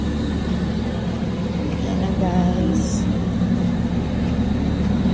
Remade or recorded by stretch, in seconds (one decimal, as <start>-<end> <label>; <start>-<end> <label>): 0.0-5.1 recorded